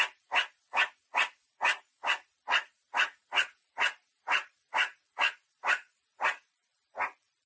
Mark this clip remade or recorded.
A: remade